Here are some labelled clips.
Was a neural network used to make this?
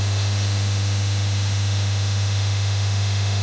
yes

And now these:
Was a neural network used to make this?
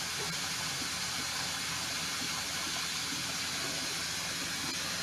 no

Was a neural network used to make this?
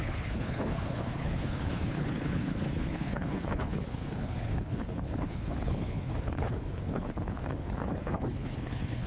yes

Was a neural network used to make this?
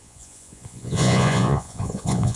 yes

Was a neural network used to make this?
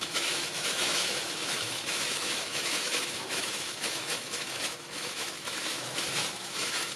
yes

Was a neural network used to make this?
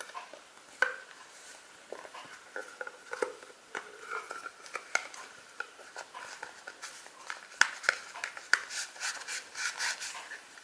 no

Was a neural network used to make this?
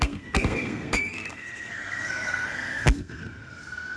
yes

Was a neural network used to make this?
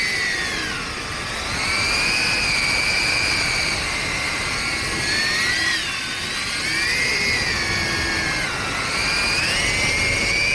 no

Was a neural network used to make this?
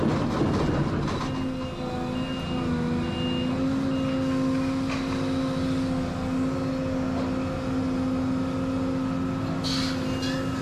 no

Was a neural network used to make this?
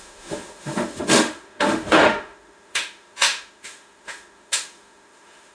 yes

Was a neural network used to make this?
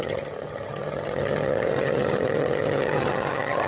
yes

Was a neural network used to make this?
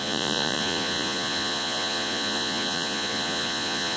yes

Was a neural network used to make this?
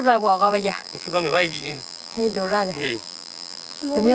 yes